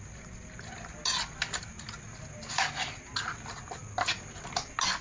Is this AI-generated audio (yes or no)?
no